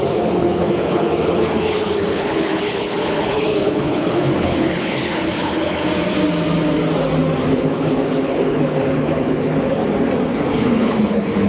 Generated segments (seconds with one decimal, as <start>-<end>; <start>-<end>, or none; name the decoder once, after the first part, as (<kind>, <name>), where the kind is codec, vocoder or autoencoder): 0.0-5.8 (codec, HILCodec); 7.4-9.8; 10.5-11.5